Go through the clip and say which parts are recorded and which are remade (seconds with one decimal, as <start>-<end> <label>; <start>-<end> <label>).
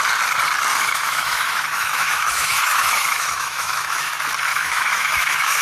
0.0-0.7 recorded; 0.7-4.1 remade; 4.1-4.5 recorded; 4.5-5.6 remade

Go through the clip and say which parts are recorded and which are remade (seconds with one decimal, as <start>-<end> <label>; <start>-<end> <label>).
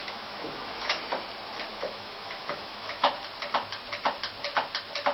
0.0-1.0 remade; 1.0-1.7 recorded; 1.7-3.1 remade; 3.1-5.1 recorded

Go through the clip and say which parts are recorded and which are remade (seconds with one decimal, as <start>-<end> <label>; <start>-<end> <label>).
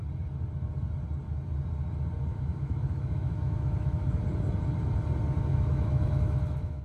0.0-2.3 recorded; 2.3-4.2 remade; 4.2-5.5 recorded; 5.5-6.8 remade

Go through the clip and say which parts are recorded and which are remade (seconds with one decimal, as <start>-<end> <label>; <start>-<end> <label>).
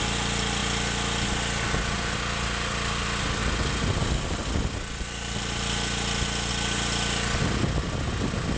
0.0-8.6 recorded